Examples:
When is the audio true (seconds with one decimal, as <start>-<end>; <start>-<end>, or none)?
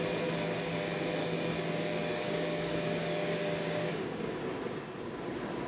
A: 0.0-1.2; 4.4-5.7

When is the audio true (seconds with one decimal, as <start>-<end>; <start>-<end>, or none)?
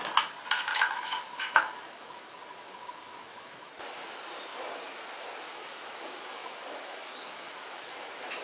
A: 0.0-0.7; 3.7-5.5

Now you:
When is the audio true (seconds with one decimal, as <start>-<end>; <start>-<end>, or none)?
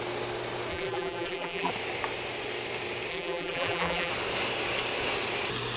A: 0.0-0.7; 1.7-3.1; 4.1-5.8